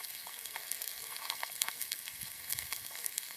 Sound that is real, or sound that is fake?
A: fake